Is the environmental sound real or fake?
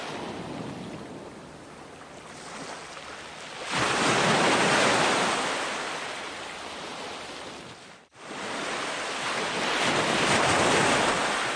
real